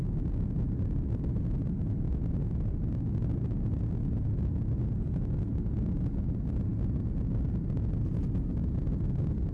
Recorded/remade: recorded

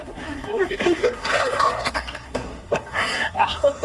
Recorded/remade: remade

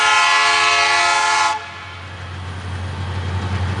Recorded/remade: recorded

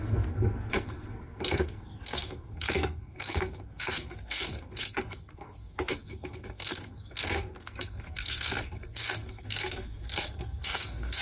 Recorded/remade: remade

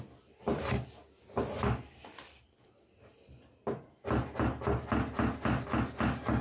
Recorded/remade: recorded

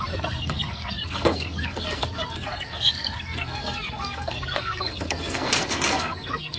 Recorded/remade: remade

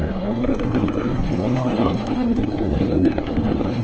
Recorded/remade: remade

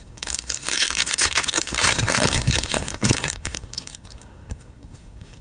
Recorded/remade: remade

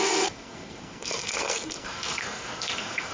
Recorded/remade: remade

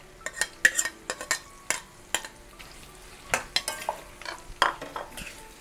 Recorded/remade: recorded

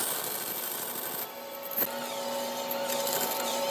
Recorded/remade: recorded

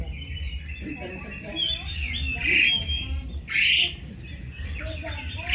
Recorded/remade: recorded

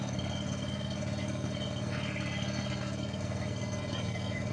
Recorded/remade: remade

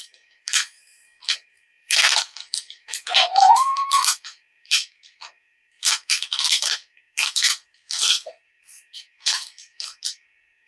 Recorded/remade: remade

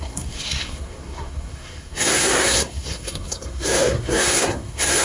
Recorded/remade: remade